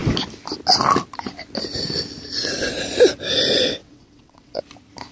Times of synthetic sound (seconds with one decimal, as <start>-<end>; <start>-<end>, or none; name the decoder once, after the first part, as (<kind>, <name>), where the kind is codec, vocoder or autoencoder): 3.8-4.6 (vocoder, WaveNeXt)